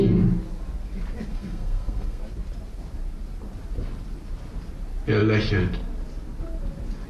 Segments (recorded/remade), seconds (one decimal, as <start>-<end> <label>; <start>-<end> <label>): 0.0-1.3 recorded; 1.3-2.2 remade; 2.2-7.1 recorded